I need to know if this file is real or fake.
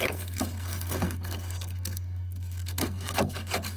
fake